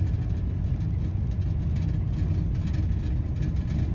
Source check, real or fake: real